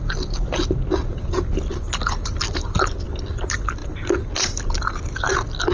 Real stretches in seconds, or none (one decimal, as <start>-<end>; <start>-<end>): 0.0-5.7